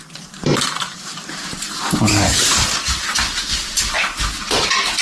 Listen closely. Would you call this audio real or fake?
fake